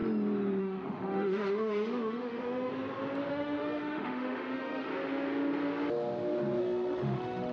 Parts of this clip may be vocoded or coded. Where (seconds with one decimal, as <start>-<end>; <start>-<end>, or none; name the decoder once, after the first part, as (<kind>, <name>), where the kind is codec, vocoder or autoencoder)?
0.6-2.7 (autoencoder, DAC-VAE); 3.3-4.9; 6.6-7.5